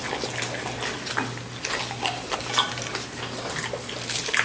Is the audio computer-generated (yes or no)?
no